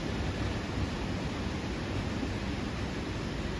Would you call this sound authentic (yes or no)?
yes